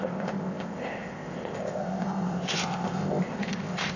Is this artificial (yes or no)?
yes